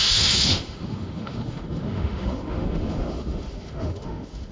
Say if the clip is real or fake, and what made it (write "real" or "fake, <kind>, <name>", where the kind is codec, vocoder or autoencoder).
fake, autoencoder, DAC-VAE